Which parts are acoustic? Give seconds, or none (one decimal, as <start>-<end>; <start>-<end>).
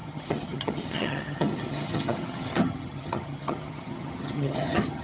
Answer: none